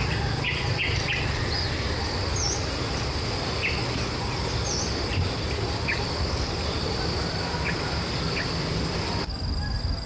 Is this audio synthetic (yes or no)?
no